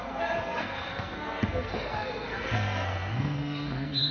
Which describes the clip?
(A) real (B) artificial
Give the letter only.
B